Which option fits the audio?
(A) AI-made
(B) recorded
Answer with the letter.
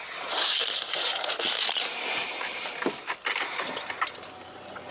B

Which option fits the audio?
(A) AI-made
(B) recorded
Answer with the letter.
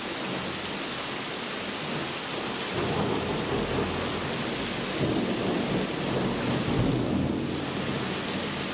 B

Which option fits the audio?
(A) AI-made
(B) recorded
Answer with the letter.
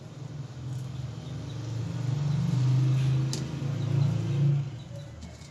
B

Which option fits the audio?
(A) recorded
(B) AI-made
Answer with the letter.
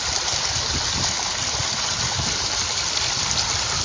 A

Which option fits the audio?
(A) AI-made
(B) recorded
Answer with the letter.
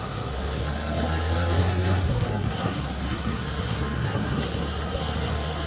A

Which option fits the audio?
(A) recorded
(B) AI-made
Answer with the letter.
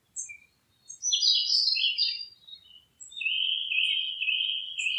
A